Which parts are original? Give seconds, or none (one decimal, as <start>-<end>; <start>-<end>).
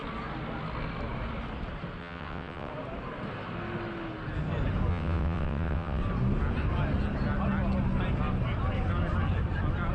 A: 0.0-2.0; 2.7-4.9; 6.0-9.9